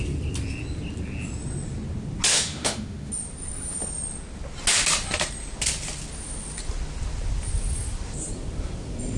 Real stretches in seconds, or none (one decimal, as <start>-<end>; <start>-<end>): 0.0-2.3; 3.1-9.2